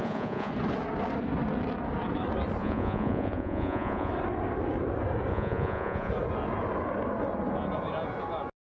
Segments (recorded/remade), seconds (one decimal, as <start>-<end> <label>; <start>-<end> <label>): 0.0-0.5 remade; 0.5-2.6 recorded; 2.6-4.1 remade; 4.1-5.3 recorded; 5.3-6.1 remade; 6.1-8.6 recorded